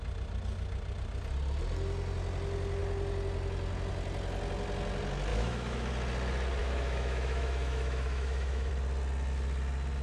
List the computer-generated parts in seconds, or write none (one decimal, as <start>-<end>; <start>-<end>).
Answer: 5.3-5.9; 6.6-8.7